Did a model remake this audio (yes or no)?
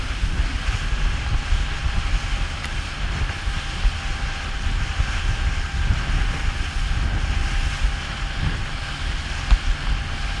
no